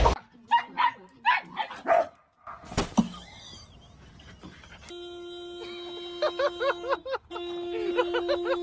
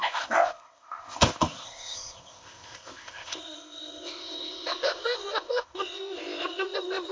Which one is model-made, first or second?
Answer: second